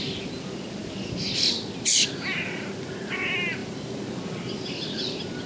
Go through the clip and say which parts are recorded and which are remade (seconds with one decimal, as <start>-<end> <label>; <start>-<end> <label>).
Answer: 0.0-5.5 recorded